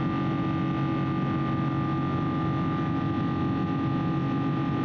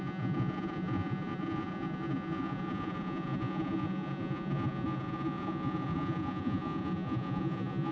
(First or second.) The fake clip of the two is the second